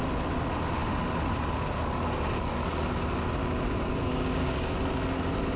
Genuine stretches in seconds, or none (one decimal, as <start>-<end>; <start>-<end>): 0.0-3.4; 4.8-5.6